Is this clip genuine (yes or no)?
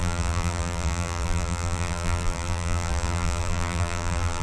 no